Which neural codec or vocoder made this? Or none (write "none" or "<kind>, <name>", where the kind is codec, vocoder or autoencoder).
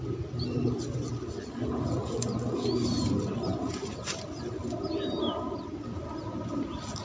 none